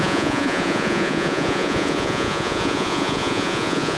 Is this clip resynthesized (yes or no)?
yes